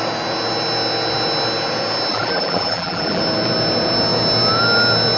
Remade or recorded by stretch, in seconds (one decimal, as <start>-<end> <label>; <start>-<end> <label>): 0.0-2.1 recorded; 2.1-3.2 remade; 3.2-5.2 recorded